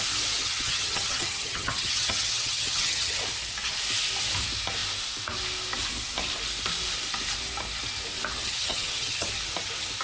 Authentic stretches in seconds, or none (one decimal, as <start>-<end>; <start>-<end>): 0.0-0.4; 3.2-8.4; 9.3-10.0